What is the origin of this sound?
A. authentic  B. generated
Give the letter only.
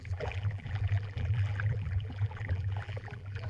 B